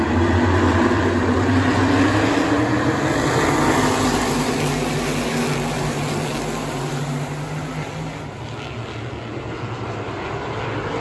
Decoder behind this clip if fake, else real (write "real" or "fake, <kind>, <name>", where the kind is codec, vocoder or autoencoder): real